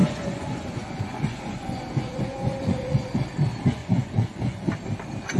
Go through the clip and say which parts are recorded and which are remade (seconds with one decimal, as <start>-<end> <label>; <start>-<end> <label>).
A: 0.0-3.2 remade; 3.2-3.8 recorded; 3.8-4.7 remade; 4.7-5.4 recorded